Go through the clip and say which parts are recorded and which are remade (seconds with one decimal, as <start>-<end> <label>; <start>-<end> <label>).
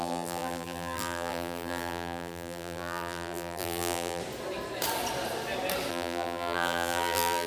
0.0-4.2 remade; 4.2-5.9 recorded; 5.9-7.5 remade